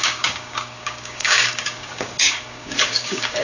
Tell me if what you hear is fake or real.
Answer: fake